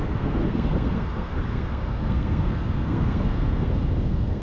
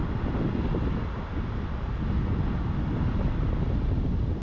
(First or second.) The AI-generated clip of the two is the first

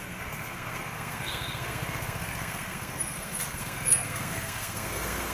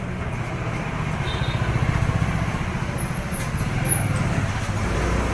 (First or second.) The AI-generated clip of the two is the first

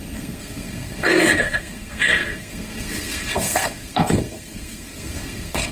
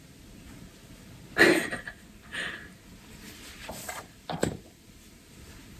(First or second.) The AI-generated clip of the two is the first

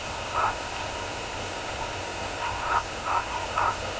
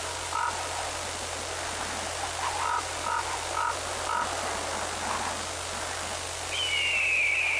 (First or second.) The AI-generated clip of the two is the first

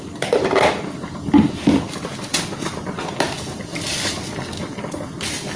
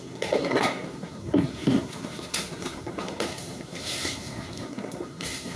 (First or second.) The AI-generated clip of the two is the second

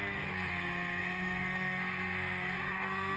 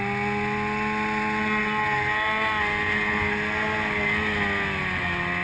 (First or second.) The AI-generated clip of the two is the first